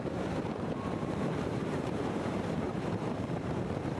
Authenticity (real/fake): fake